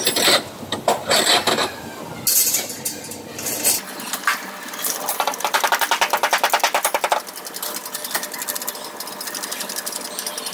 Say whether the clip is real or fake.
real